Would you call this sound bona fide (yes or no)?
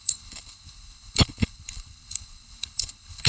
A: no